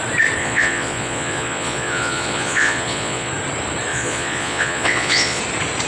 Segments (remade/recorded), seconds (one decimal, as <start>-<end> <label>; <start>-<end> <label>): 0.0-0.4 recorded; 0.4-3.3 remade; 3.3-3.9 recorded; 3.9-5.4 remade; 5.4-5.9 recorded